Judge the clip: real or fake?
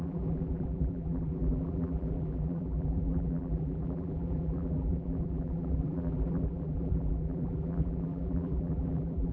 fake